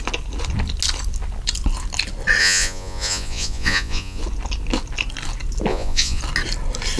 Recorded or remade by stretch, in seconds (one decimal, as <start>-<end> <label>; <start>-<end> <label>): 0.0-2.4 recorded; 2.4-4.2 remade; 4.2-5.7 recorded; 5.7-6.2 remade; 6.2-7.0 recorded